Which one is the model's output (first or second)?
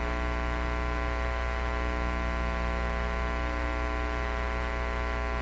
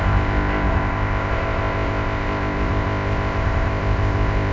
second